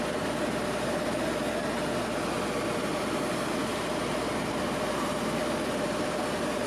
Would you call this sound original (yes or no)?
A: yes